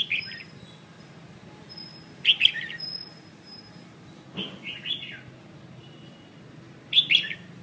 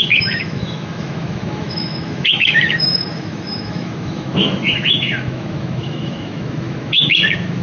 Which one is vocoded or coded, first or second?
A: second